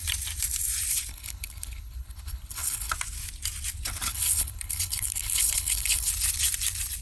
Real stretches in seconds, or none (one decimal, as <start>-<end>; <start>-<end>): 0.0-1.1; 2.9-4.1; 6.1-7.0